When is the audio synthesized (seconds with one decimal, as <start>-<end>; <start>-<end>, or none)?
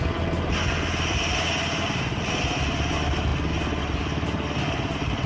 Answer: none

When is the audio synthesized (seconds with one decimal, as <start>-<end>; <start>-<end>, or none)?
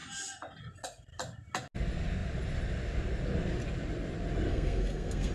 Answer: 4.5-5.3